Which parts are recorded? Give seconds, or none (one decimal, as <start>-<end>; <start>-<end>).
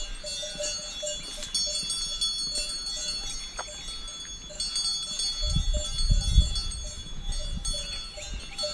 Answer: 0.0-8.7